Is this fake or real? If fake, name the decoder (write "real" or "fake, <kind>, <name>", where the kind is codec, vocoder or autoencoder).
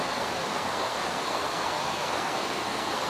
fake, codec, SNAC